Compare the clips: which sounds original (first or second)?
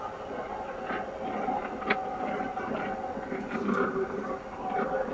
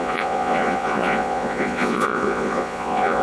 first